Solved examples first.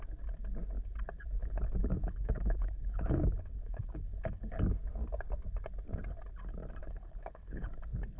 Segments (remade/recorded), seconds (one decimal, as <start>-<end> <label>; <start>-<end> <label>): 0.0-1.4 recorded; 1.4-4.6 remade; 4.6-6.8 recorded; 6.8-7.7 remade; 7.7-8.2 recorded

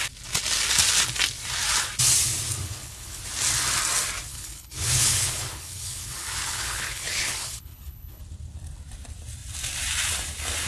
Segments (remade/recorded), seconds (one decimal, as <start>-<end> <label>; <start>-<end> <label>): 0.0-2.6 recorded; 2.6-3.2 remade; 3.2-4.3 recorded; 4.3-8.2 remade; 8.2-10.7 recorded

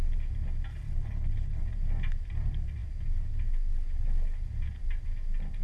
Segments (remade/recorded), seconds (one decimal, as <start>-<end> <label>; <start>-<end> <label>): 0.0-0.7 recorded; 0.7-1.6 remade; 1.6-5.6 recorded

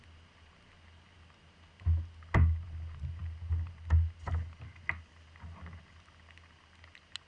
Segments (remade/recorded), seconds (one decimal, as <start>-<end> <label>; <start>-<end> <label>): 0.0-7.3 recorded

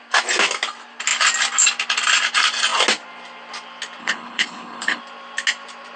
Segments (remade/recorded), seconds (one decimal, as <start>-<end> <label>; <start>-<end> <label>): 0.0-4.0 recorded; 4.0-5.0 remade; 5.0-6.0 recorded

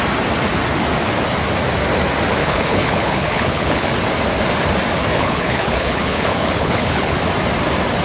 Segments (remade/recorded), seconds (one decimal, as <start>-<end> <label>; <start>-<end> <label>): 0.0-2.4 recorded; 2.4-3.9 remade; 3.9-5.1 recorded; 5.1-7.2 remade; 7.2-8.0 recorded

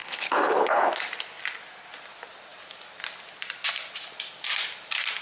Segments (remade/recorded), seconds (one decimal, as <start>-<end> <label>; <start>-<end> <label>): 0.0-0.9 remade; 0.9-5.2 recorded